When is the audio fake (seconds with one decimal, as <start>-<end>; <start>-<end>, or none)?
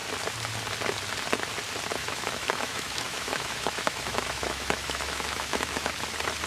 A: 2.0-5.9